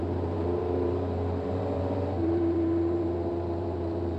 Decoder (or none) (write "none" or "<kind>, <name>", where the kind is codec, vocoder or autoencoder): vocoder, BigVGAN v2